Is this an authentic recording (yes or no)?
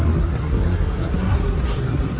no